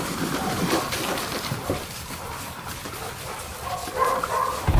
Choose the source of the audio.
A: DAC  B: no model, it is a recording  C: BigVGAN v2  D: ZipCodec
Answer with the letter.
C